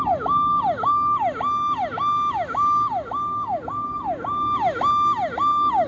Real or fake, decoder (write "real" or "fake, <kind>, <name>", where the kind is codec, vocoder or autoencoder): real